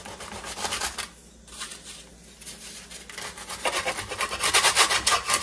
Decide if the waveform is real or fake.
real